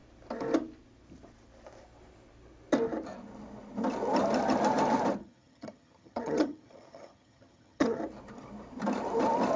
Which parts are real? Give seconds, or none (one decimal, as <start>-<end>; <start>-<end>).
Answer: 0.0-5.2; 8.0-9.6

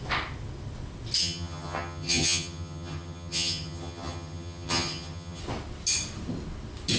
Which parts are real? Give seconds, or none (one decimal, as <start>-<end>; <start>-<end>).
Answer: 0.0-1.2; 5.4-7.0

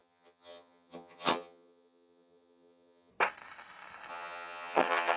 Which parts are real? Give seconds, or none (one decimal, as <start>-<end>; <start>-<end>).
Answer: 3.1-4.1

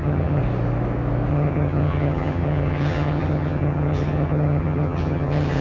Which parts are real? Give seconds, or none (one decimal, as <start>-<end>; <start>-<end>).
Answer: 0.4-1.3

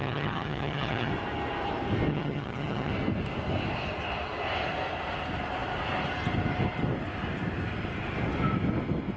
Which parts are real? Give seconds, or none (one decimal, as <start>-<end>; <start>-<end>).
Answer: 1.1-2.1; 2.9-9.2

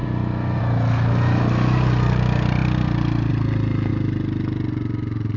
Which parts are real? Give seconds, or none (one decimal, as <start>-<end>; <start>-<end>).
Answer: 0.0-5.4

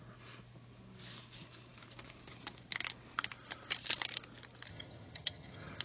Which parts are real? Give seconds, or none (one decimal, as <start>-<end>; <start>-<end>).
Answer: 0.0-4.7